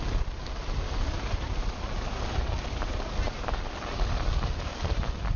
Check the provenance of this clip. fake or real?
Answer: real